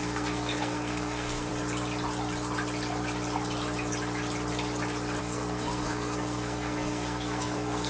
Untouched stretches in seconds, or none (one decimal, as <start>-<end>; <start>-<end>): 1.5-5.2